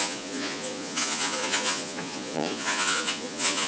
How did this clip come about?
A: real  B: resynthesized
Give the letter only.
B